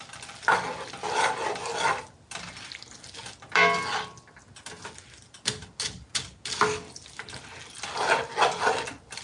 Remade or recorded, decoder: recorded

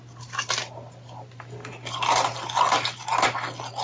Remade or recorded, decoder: recorded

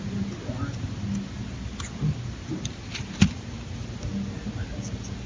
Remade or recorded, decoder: recorded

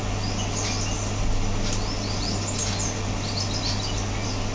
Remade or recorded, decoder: recorded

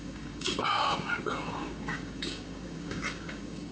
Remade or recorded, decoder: remade, codec, DAC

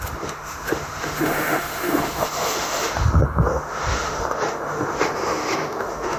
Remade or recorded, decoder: remade, autoencoder, DAC-VAE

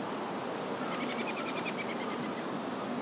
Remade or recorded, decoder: recorded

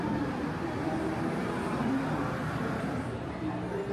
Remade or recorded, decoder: recorded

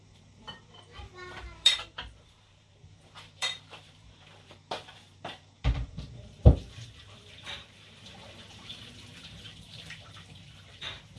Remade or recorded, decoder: remade, vocoder, BigVGAN v2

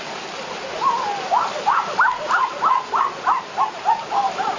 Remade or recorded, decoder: recorded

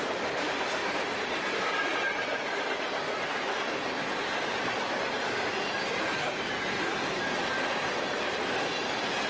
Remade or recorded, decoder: remade, vocoder, BigVGAN v2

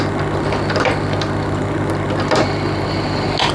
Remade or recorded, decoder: recorded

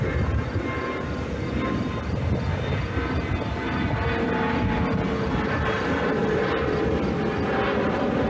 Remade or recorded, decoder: recorded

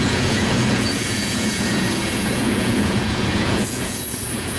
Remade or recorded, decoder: remade, vocoder, Vocos